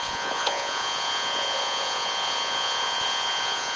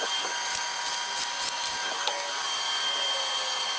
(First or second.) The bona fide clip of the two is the second